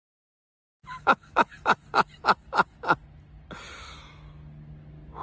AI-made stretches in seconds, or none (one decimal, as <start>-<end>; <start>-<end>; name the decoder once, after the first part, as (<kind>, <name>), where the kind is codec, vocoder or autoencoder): none